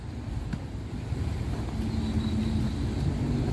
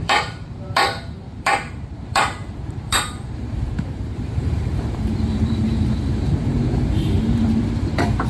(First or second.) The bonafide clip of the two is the first